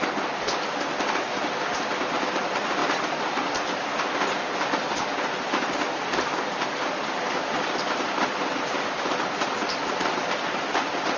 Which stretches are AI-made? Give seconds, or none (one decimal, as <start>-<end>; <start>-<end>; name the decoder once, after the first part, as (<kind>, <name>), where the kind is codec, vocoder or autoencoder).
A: none